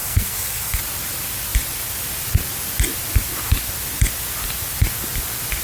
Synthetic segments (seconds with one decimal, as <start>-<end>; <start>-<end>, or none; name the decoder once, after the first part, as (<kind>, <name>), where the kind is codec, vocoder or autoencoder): 0.0-0.8 (codec, SNAC)